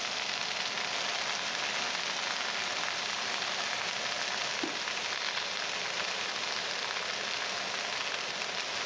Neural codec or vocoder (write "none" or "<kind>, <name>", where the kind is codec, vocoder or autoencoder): none